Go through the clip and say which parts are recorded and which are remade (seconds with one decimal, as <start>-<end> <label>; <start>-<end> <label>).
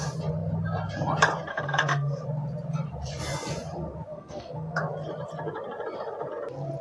0.0-1.5 recorded; 1.5-2.2 remade; 2.2-4.1 recorded; 4.1-4.8 remade; 4.8-6.8 recorded